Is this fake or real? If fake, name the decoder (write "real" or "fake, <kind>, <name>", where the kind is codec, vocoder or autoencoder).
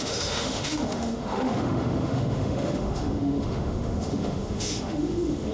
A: fake, autoencoder, DAC-VAE